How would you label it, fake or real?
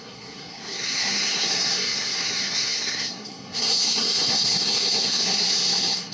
fake